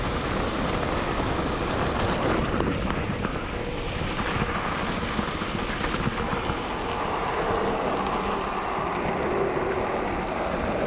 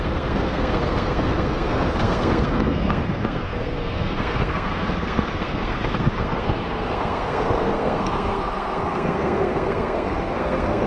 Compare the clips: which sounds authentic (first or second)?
first